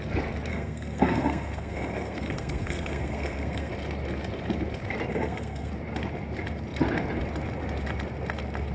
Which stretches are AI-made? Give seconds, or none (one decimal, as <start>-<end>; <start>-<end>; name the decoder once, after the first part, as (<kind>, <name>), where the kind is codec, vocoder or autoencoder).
0.5-3.7 (codec, SNAC); 5.1-5.7